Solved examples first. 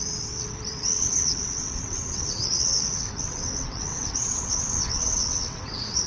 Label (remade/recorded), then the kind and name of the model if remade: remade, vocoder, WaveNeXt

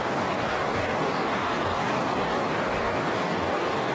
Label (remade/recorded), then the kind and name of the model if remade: remade, codec, DAC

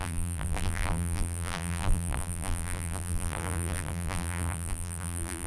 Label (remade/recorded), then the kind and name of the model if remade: remade, vocoder, BigVGAN v2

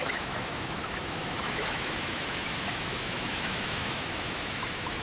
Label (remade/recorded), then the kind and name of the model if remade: remade, autoencoder, DAC-VAE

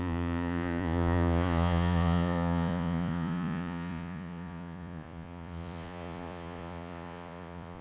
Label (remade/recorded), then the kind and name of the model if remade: remade, vocoder, Vocos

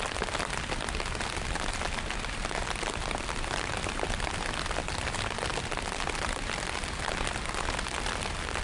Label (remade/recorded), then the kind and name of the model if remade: recorded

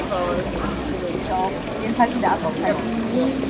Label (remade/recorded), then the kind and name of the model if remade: recorded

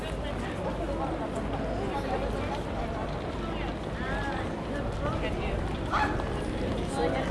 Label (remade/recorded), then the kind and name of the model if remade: recorded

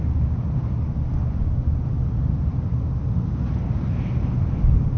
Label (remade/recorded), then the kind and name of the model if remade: recorded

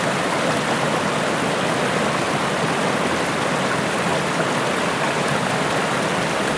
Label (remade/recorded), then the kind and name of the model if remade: recorded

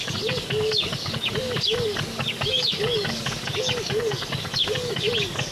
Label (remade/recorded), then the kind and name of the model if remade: remade, codec, DAC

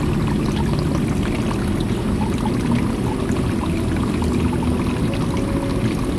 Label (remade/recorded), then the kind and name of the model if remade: recorded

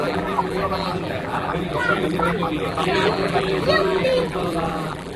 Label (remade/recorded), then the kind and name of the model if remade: remade, vocoder, BigVGAN v2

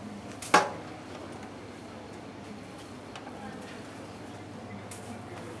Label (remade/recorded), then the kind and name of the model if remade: recorded